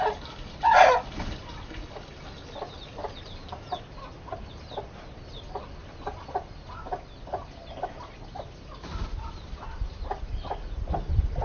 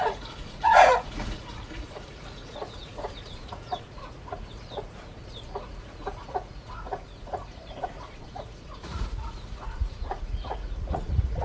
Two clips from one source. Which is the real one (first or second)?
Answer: first